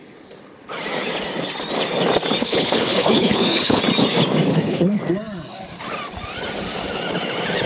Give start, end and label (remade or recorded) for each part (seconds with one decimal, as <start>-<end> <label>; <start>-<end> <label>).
0.0-2.4 recorded; 2.4-3.8 remade; 3.8-4.5 recorded; 4.5-5.0 remade; 5.0-7.7 recorded